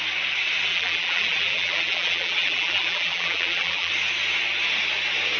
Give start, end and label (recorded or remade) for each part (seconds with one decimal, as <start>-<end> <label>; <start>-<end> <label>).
0.0-0.7 recorded; 0.7-3.9 remade; 3.9-5.4 recorded